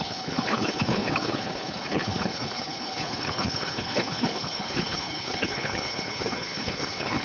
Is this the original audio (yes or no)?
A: no